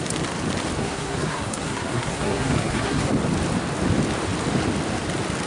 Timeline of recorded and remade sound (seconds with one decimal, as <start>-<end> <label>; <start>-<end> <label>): 0.0-0.8 recorded; 0.8-3.1 remade; 3.1-5.5 recorded